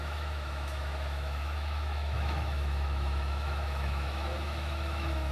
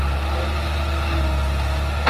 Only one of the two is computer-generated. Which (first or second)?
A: first